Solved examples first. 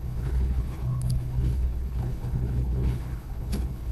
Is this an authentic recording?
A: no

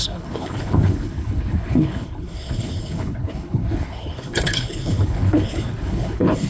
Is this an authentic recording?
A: no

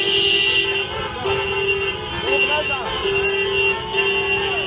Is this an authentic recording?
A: yes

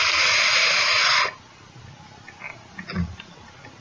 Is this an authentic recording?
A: yes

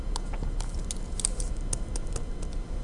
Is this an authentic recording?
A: yes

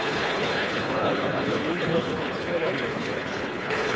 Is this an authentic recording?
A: no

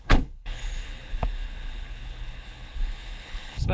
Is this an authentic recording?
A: no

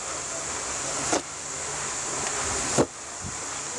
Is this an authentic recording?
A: yes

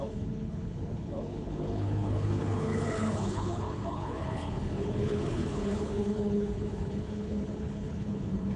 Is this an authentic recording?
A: no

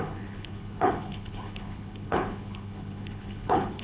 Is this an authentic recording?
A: no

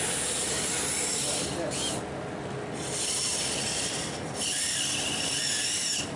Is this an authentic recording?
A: yes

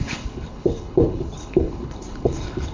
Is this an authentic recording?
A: no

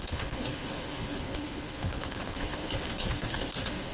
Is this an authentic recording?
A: no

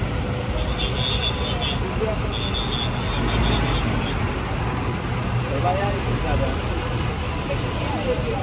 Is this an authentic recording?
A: yes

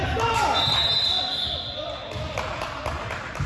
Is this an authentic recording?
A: yes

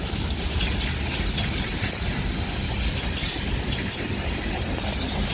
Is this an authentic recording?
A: yes